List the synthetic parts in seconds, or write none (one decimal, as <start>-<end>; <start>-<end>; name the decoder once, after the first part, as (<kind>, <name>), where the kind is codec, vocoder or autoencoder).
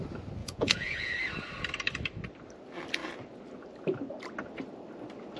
0.4-1.1 (vocoder, Vocos)